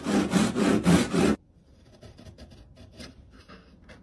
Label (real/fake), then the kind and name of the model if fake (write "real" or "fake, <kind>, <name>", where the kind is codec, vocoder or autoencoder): real